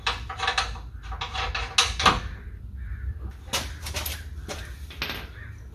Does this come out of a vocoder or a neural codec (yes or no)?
no